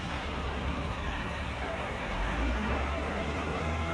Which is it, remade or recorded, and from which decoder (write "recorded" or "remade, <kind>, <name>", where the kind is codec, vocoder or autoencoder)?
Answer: remade, codec, SNAC